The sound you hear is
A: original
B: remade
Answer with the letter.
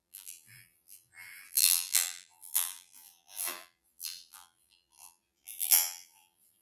B